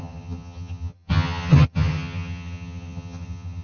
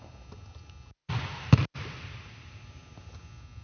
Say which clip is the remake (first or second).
first